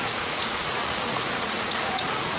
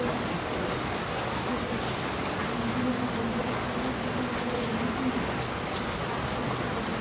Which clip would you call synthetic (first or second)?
first